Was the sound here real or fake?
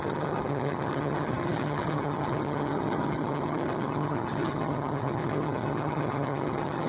fake